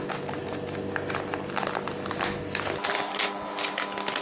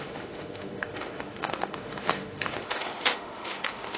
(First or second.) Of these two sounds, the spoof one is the second